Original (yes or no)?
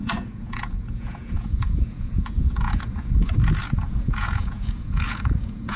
no